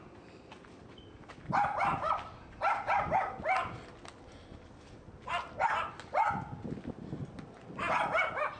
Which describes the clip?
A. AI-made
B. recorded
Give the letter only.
B